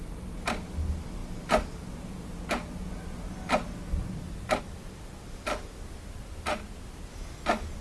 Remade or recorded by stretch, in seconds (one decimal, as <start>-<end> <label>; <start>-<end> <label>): 0.0-7.8 recorded